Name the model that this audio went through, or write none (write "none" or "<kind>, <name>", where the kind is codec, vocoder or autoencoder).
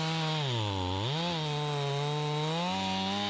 none